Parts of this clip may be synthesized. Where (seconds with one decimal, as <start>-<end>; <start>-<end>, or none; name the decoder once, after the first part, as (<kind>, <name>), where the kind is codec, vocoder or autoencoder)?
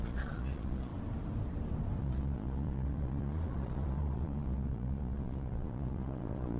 0.0-0.9 (vocoder, Vocos); 2.0-6.6